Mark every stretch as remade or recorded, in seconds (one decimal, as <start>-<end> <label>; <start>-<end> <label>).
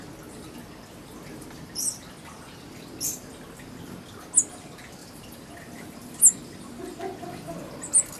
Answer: 0.0-5.0 recorded; 5.0-6.2 remade; 6.2-8.2 recorded